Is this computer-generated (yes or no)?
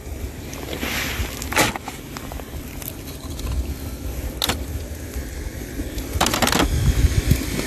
no